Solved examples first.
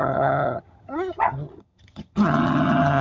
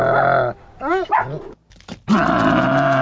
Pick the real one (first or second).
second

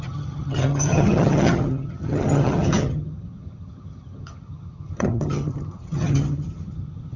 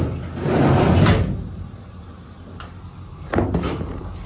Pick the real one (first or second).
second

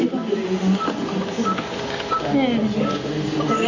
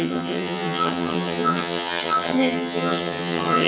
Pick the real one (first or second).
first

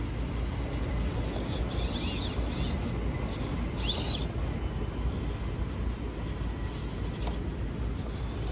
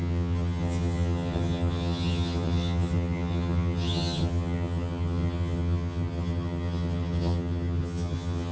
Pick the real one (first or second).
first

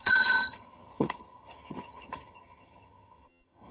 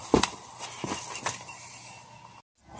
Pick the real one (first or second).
second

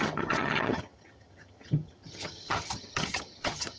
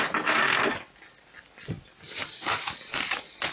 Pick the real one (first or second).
second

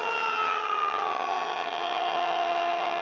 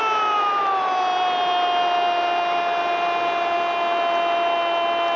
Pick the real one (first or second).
second